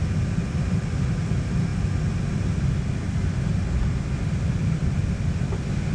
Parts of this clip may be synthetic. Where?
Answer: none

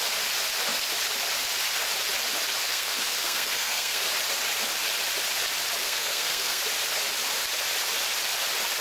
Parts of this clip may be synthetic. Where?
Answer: 2.7-4.0 (codec, SNAC); 5.8-6.6

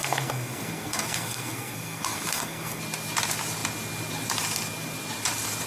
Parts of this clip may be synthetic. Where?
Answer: 0.0-2.8 (codec, SNAC)